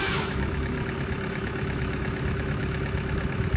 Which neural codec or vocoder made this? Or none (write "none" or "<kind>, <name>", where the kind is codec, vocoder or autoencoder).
autoencoder, DAC-VAE